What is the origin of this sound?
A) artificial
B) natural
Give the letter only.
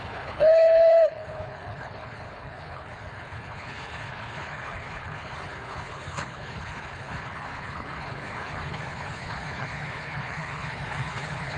A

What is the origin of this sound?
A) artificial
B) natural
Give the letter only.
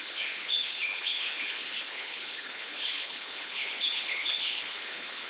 A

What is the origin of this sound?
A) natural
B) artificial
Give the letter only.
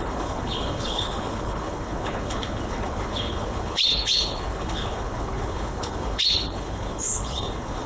B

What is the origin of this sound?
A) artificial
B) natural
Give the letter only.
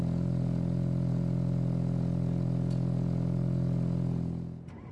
B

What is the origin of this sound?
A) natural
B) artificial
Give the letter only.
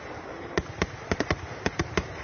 A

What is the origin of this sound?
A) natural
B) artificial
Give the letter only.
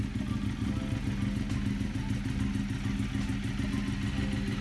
A